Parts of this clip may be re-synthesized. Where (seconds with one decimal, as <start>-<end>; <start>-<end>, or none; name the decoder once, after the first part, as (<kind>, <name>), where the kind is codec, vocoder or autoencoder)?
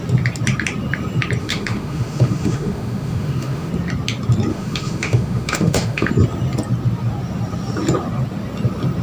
1.4-3.7 (autoencoder, DAC-VAE); 4.5-6.1